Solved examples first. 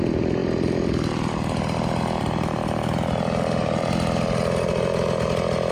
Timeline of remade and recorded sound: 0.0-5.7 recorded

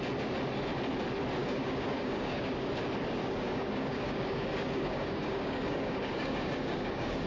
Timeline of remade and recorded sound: 0.0-1.4 recorded; 1.4-2.7 remade; 2.7-3.2 recorded; 3.2-7.3 remade

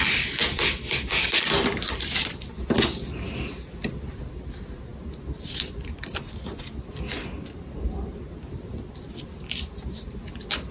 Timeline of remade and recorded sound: 0.0-10.7 recorded